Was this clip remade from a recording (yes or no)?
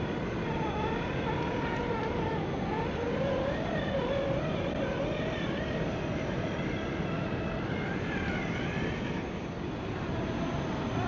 no